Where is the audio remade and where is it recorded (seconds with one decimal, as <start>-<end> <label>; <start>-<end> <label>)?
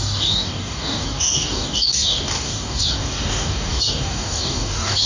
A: 0.0-5.1 remade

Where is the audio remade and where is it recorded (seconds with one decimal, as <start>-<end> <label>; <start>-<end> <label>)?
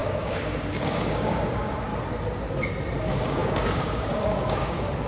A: 0.0-1.9 remade; 1.9-3.0 recorded; 3.0-5.1 remade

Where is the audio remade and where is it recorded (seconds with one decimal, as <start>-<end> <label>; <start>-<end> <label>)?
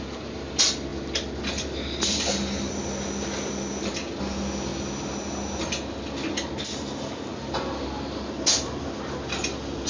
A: 0.0-9.9 recorded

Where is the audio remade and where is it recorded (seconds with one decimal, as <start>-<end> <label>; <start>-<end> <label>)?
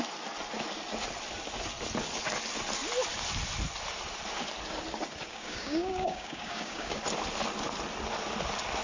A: 0.0-5.3 recorded; 5.3-7.0 remade; 7.0-8.8 recorded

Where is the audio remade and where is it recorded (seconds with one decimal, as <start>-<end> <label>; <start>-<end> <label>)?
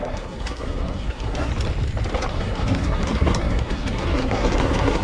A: 0.0-1.5 remade; 1.5-2.3 recorded; 2.3-5.0 remade